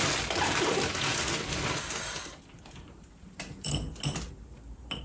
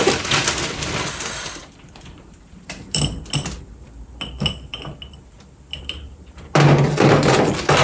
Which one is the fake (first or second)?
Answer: second